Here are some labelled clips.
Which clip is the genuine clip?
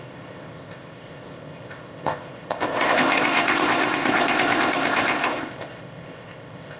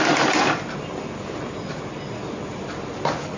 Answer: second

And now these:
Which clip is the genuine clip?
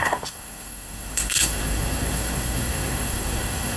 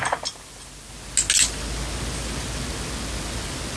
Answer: second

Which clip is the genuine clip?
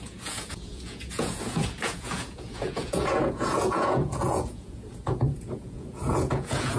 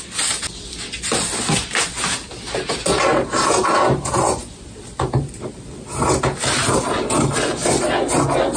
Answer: second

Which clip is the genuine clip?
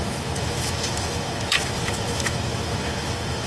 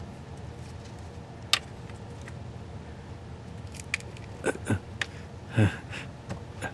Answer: second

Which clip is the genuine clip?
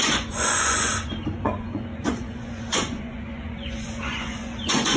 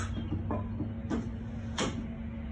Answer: second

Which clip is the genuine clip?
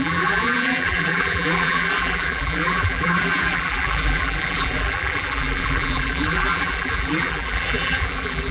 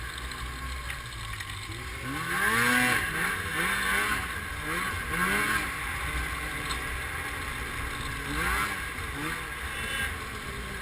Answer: second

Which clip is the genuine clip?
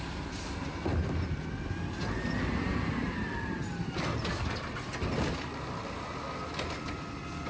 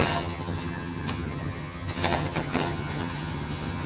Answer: first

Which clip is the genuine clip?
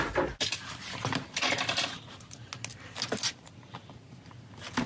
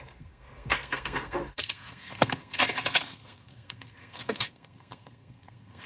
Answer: first